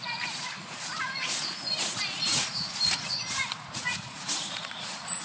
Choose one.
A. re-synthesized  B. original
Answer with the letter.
A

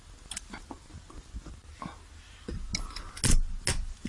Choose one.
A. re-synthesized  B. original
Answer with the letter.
B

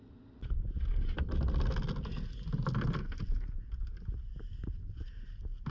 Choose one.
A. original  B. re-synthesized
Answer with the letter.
A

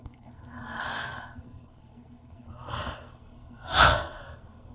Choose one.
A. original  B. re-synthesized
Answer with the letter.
B